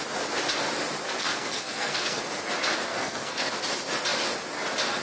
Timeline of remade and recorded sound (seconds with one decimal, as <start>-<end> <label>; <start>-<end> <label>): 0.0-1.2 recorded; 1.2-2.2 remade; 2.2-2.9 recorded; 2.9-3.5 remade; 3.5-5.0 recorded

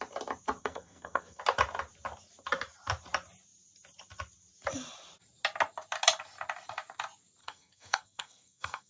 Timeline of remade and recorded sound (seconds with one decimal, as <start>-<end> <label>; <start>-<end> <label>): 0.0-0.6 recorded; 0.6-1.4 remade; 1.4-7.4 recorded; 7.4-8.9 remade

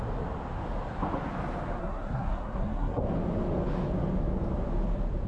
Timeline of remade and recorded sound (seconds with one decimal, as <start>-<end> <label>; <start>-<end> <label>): 0.0-1.8 recorded; 1.8-3.0 remade; 3.0-5.3 recorded

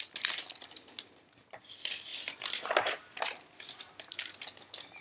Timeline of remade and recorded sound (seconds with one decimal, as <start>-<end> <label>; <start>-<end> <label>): 0.0-5.0 recorded